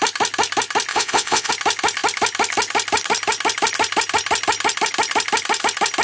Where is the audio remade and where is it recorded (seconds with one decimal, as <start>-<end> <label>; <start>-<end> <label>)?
0.0-0.9 recorded; 0.9-1.5 remade; 1.5-6.0 recorded